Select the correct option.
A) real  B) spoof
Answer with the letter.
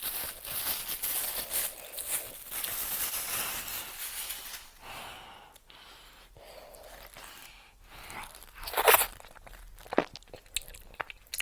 A